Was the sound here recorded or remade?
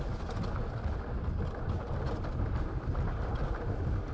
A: recorded